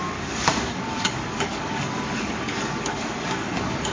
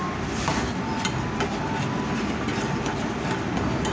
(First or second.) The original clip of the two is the second